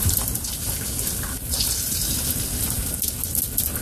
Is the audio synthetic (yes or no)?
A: no